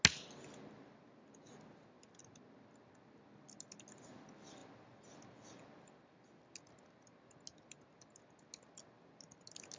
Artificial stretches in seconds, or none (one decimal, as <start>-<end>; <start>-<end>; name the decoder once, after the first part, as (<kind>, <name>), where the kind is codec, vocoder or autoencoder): none